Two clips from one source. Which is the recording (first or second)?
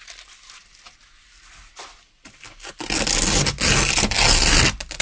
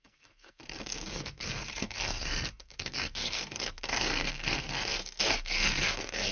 first